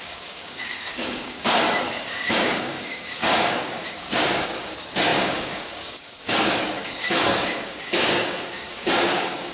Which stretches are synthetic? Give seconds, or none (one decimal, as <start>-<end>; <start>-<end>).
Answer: 0.0-9.5